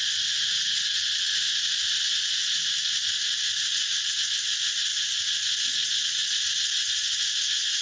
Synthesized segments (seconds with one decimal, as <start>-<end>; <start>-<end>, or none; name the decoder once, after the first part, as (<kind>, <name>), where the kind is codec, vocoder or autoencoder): none